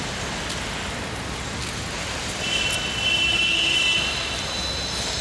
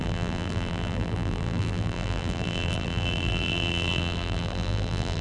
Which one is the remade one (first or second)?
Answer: second